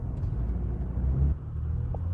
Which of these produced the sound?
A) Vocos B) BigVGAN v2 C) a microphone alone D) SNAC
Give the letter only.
C